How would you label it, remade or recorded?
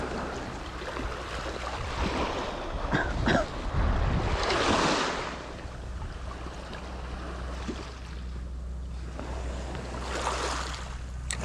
recorded